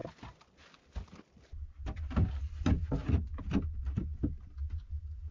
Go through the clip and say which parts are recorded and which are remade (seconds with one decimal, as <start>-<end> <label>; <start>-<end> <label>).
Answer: 0.0-5.3 recorded